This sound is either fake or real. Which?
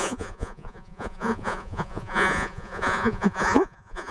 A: fake